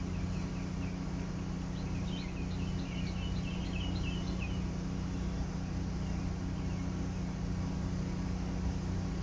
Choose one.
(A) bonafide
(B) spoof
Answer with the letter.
A